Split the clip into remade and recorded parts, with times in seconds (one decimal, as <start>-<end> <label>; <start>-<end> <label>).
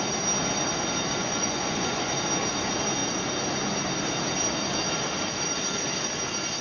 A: 0.0-1.2 recorded; 1.2-2.1 remade; 2.1-6.6 recorded